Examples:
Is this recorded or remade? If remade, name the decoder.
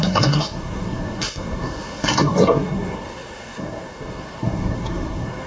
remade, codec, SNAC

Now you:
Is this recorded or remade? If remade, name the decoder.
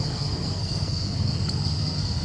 remade, codec, SNAC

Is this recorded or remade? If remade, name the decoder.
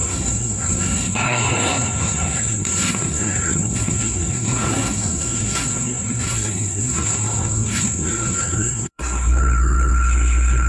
remade, codec, SNAC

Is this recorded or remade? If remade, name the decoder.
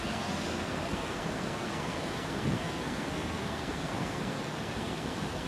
remade, codec, SNAC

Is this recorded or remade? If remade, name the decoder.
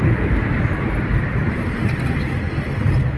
recorded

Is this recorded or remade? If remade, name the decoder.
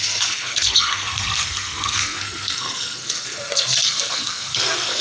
remade, codec, SNAC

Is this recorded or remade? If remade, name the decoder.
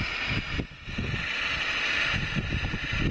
recorded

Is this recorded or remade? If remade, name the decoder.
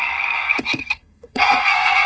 remade, codec, SNAC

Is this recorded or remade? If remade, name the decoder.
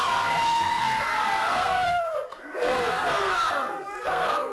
remade, codec, SNAC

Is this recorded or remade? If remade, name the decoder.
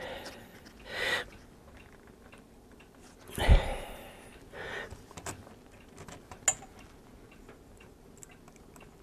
recorded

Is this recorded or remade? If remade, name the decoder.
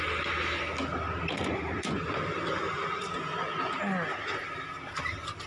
recorded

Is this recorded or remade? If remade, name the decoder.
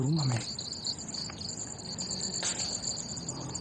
recorded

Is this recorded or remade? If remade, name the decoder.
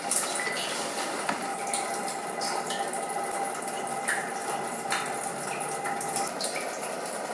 recorded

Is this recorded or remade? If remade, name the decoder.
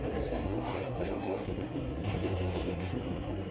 remade, codec, SNAC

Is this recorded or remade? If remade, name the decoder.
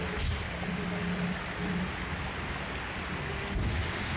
recorded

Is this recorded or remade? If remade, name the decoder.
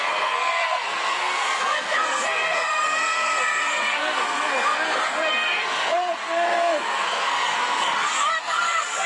remade, codec, SNAC